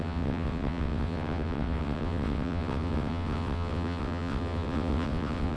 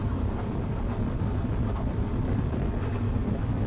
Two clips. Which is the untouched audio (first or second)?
second